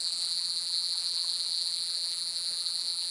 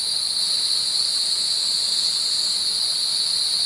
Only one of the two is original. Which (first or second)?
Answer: second